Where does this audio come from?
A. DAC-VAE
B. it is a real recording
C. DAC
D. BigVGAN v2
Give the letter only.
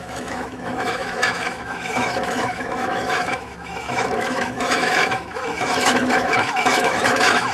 A